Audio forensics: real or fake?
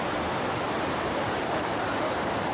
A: fake